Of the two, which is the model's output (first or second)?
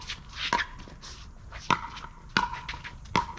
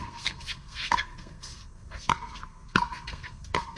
second